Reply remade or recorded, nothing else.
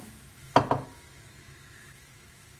remade